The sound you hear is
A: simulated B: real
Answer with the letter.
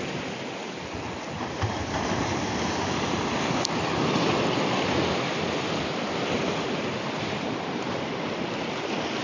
B